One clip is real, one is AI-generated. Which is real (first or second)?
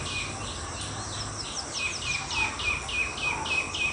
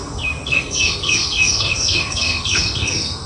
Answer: first